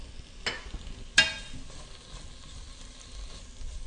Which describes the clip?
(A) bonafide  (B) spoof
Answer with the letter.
A